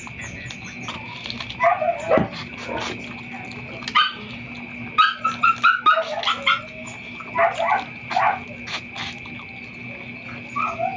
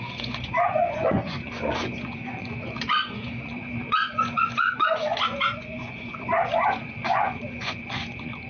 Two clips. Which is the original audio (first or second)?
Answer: first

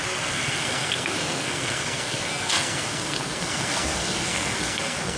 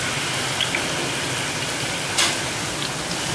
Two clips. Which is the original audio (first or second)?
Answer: second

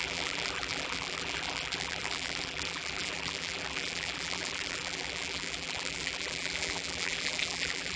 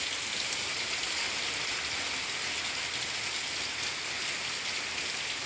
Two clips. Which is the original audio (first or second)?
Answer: second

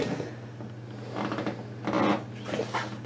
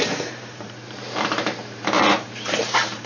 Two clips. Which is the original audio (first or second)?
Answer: first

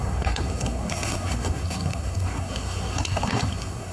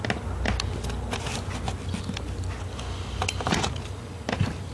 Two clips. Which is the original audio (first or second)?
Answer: second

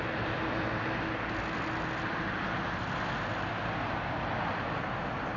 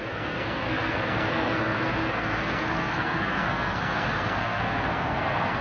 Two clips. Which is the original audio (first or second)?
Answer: first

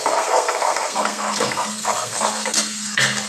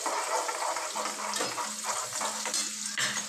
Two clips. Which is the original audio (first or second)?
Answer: second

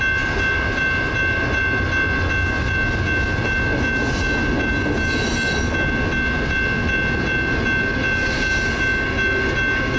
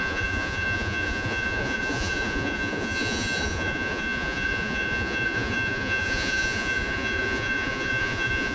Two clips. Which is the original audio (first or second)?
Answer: first